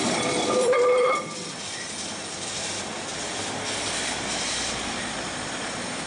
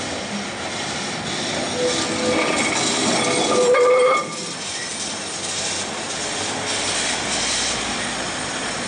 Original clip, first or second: second